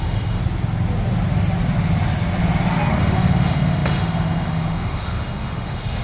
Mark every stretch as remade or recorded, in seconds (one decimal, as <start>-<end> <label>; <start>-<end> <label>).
0.0-0.4 remade; 0.4-3.0 recorded; 3.0-6.0 remade